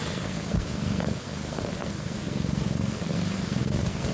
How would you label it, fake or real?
fake